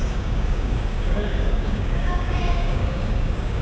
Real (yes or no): no